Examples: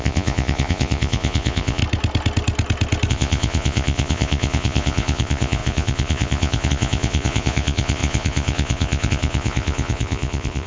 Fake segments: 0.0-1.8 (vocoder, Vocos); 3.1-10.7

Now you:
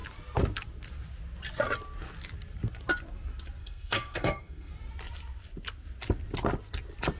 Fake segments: 3.6-4.7 (codec, SNAC)